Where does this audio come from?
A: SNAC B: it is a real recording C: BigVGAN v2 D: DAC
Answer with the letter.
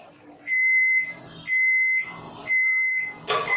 C